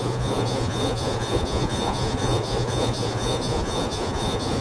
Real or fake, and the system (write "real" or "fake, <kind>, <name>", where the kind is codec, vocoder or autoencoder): fake, vocoder, Vocos